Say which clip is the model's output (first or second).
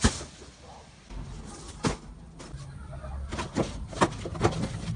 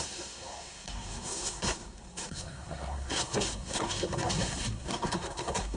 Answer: second